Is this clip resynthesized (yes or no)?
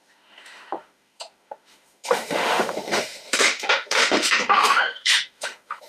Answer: yes